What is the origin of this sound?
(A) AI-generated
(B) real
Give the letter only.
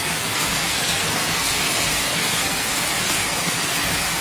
A